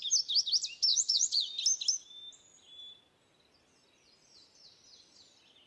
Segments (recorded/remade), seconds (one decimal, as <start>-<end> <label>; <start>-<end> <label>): 0.0-0.9 recorded; 0.9-1.5 remade; 1.5-5.7 recorded